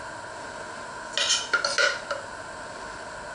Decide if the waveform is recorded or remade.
recorded